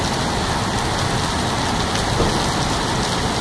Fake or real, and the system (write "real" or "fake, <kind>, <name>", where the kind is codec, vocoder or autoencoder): real